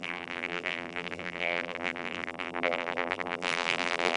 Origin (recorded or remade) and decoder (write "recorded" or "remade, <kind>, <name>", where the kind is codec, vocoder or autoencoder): remade, vocoder, BigVGAN v2